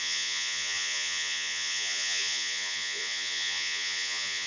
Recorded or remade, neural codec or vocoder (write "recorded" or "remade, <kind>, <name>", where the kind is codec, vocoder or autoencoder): remade, vocoder, Vocos